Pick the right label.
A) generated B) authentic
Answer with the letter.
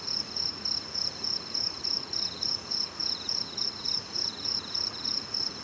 A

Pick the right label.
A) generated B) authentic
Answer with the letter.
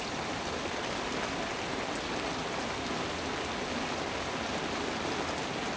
B